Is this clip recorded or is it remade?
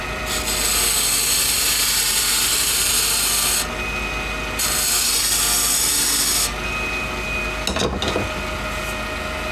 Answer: recorded